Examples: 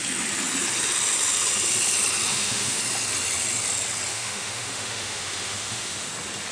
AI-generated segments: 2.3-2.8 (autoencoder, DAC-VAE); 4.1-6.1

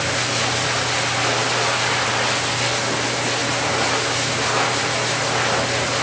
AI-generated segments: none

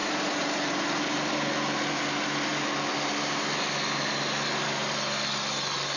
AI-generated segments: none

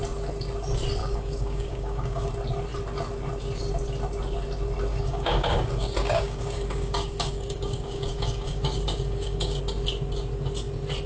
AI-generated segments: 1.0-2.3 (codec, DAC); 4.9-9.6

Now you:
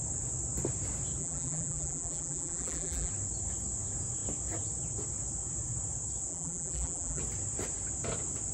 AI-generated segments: 1.2-3.1 (vocoder, BigVGAN v2); 6.3-7.2